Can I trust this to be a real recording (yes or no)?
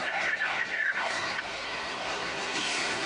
no